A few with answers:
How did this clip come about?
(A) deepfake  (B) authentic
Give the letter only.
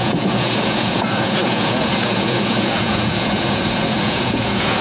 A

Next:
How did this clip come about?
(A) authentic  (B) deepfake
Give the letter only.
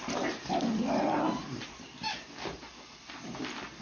A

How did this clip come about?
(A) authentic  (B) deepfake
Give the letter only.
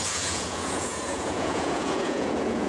B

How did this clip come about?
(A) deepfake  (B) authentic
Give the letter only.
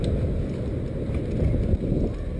B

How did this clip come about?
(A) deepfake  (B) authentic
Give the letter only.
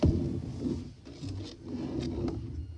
B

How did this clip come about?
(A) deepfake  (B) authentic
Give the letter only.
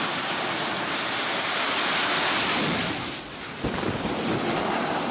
B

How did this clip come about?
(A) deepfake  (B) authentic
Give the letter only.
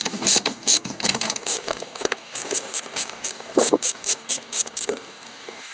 A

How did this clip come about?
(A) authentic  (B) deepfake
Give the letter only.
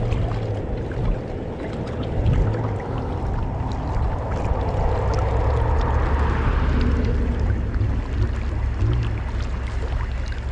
A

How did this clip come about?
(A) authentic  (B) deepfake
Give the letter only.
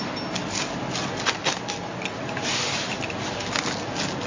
A